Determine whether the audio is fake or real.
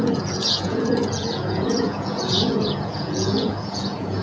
fake